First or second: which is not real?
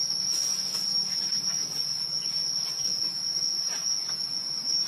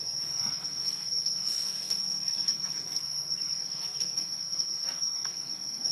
second